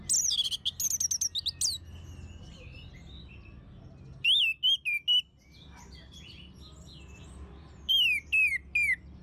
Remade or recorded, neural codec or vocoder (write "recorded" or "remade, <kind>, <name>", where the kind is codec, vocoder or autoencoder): recorded